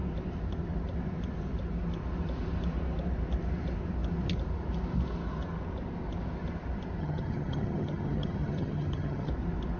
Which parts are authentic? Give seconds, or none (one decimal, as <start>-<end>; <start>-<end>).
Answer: 0.0-7.0; 9.3-9.8